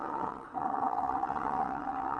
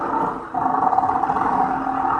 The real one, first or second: second